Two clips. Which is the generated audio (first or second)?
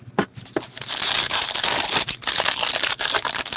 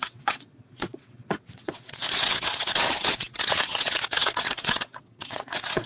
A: second